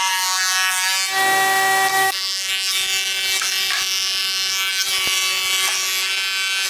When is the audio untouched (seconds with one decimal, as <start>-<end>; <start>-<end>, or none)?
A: 0.0-1.9; 2.5-6.7